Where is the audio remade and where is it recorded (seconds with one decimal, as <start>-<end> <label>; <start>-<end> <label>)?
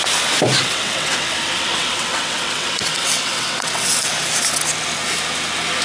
0.0-0.6 recorded; 0.6-4.1 remade; 4.1-5.8 recorded